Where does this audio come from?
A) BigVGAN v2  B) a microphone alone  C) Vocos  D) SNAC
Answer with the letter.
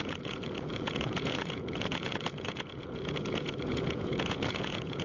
C